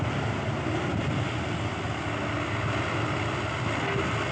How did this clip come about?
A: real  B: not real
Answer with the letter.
A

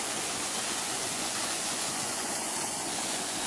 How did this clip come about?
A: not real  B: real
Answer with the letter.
A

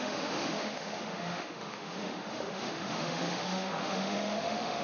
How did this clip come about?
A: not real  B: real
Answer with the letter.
A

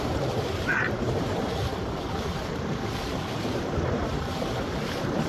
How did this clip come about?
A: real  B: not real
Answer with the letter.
B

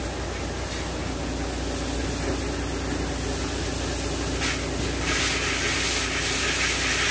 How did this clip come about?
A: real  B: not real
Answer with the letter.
A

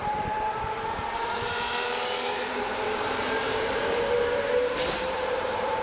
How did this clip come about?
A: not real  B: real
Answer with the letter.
A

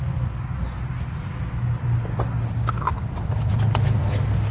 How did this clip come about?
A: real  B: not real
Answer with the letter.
A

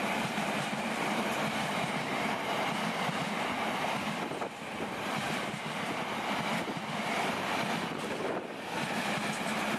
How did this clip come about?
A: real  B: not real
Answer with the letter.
B